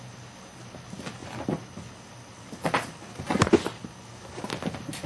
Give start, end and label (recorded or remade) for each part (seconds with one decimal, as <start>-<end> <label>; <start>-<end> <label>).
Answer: 0.0-5.1 recorded